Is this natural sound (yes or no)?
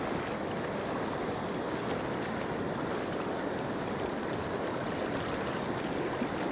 yes